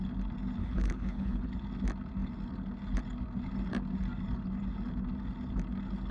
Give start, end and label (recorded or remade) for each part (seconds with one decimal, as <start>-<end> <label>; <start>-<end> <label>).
0.0-0.6 recorded; 0.6-1.4 remade; 1.4-6.1 recorded